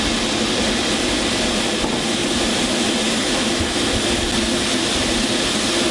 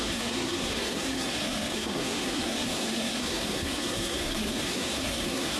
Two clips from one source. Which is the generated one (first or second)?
second